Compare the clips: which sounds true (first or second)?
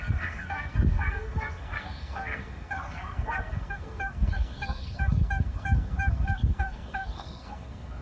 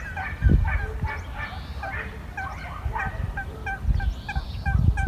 second